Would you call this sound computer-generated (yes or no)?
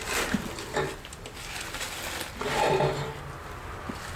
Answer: no